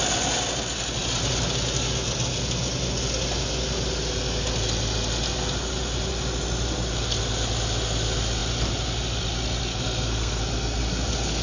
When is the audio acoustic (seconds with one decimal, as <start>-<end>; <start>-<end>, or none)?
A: 0.0-9.7; 10.4-11.4